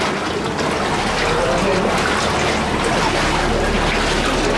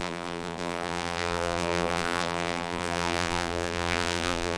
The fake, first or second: second